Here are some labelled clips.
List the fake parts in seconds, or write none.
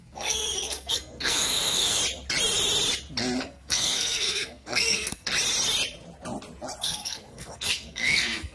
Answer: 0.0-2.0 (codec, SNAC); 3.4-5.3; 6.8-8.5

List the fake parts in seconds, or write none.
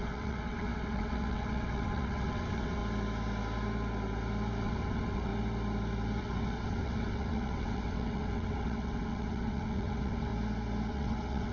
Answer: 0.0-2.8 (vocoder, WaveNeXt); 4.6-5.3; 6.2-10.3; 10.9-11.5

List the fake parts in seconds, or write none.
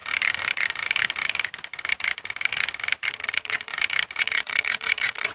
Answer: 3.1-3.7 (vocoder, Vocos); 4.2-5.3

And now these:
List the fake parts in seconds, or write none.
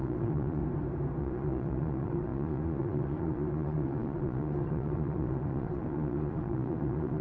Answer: 0.0-0.6 (vocoder, Vocos); 1.2-7.2